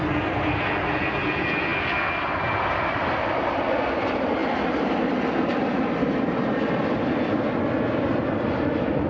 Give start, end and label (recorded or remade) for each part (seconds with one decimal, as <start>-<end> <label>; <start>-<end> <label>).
0.0-9.1 recorded